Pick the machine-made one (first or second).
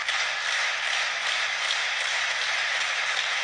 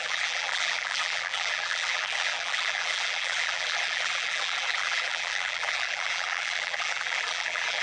second